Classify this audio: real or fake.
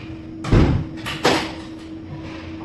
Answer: real